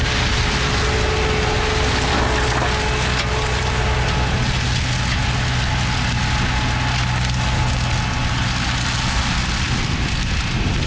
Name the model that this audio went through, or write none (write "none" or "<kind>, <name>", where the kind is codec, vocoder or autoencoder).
none